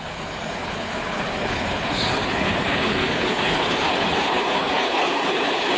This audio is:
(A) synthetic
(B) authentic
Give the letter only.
A